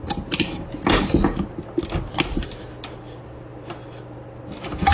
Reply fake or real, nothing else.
real